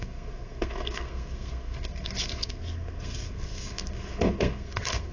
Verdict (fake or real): fake